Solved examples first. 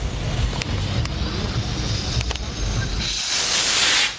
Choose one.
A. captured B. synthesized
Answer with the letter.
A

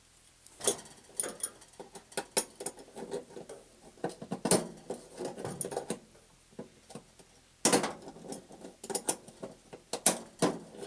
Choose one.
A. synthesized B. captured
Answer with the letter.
B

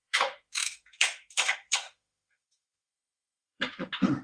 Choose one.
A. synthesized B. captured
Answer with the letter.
A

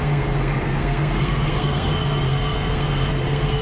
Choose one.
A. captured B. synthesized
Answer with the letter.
B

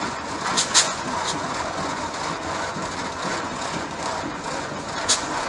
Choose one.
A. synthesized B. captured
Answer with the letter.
A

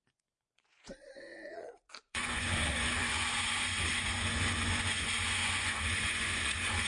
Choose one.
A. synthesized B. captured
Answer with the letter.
A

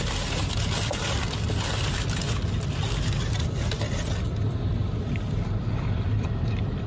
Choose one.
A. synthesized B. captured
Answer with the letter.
B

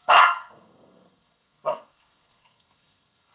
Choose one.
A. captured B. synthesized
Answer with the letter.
B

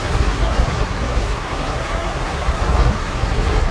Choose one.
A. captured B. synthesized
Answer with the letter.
B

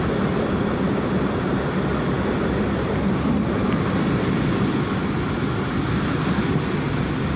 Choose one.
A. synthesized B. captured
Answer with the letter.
B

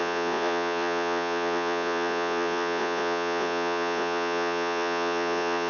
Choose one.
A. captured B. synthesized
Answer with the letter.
B